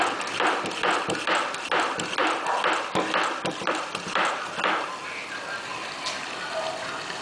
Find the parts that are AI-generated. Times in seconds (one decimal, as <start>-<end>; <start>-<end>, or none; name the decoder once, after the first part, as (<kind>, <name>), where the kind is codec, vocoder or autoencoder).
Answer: none

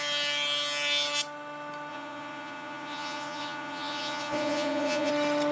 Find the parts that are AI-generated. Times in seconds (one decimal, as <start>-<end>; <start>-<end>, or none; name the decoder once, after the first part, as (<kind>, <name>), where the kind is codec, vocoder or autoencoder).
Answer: 1.9-5.1 (vocoder, Vocos)

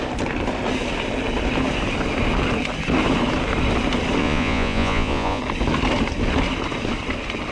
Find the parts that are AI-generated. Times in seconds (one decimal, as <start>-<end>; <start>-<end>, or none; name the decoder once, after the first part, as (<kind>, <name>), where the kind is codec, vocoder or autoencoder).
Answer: 4.2-5.4 (vocoder, Vocos)

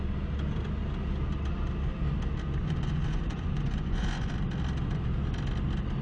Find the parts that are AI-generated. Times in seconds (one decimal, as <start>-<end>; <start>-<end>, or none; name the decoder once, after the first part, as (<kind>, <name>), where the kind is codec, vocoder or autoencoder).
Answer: 2.6-4.3 (vocoder, Vocos)